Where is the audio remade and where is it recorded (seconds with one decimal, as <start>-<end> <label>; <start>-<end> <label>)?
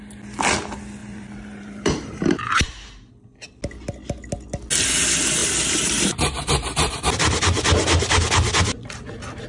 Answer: 0.0-1.0 recorded; 1.0-3.1 remade; 3.1-5.4 recorded; 5.4-6.9 remade; 6.9-9.5 recorded